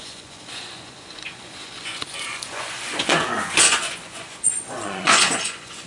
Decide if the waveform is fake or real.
fake